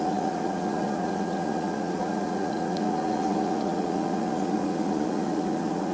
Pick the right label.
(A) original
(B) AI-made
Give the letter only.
B